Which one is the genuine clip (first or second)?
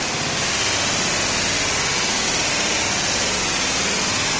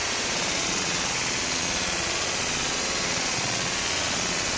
first